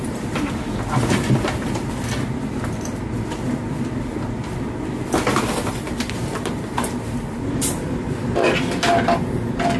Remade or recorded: remade